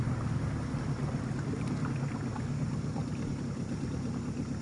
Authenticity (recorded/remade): recorded